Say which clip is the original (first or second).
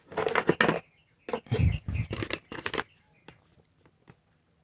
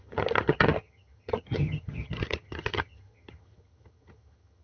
first